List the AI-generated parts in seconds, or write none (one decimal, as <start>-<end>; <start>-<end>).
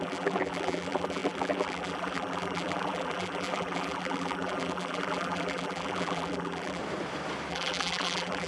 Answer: 0.0-6.8; 7.5-8.5